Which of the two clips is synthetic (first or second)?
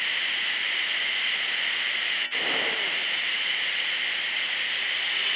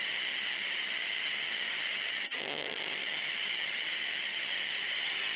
second